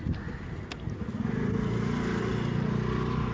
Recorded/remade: recorded